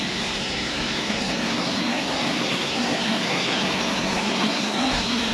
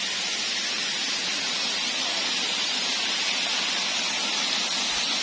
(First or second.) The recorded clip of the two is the second